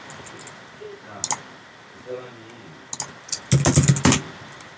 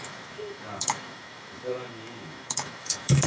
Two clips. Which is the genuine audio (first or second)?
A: first